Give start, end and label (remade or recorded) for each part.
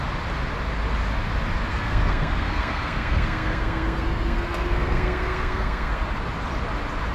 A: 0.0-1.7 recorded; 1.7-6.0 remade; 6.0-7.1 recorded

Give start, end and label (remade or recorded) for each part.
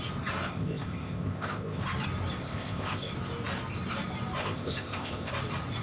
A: 0.0-0.5 recorded; 0.5-1.8 remade; 1.8-2.4 recorded; 2.4-3.1 remade; 3.1-4.4 recorded; 4.4-5.3 remade; 5.3-5.8 recorded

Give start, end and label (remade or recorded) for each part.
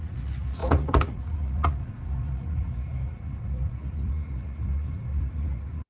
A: 0.0-5.9 remade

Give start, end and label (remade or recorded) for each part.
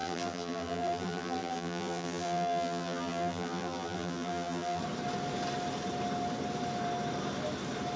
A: 0.0-4.8 remade; 4.8-8.0 recorded